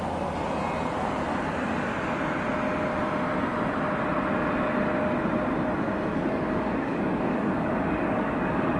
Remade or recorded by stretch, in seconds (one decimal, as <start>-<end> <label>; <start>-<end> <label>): 0.0-6.1 recorded; 6.1-8.8 remade